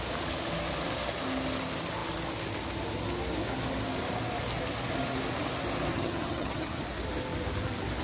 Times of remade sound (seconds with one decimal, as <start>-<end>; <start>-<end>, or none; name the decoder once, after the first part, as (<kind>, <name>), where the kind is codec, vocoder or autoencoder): 5.9-6.8 (vocoder, HiFi-GAN)